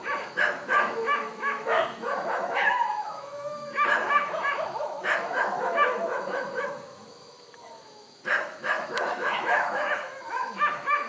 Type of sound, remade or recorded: remade